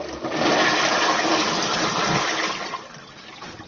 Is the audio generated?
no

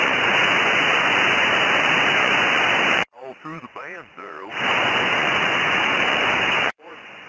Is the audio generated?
yes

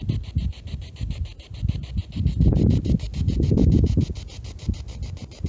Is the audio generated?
no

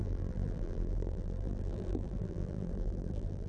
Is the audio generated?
yes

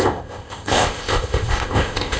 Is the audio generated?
yes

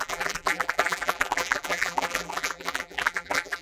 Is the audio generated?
yes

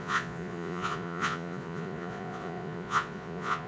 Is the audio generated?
yes